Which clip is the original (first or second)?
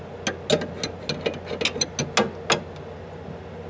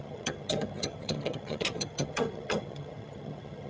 first